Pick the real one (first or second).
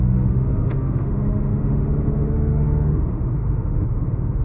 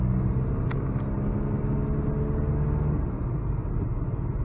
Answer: second